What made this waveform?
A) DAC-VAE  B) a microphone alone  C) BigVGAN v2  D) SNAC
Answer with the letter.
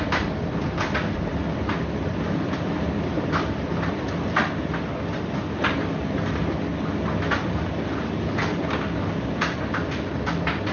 B